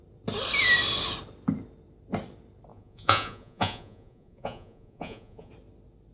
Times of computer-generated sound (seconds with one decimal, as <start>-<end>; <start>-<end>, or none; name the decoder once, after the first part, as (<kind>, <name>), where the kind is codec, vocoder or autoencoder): 2.7-5.5 (vocoder, Vocos)